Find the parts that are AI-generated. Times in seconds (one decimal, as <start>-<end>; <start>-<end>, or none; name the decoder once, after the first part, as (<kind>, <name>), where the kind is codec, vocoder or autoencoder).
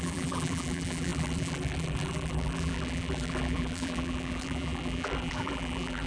0.0-6.1 (vocoder, BigVGAN v2)